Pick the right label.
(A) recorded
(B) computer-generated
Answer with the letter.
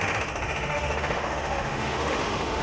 B